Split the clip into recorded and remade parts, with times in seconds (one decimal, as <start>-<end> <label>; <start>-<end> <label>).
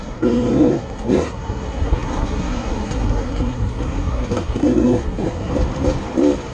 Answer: 0.0-5.5 remade; 5.5-6.5 recorded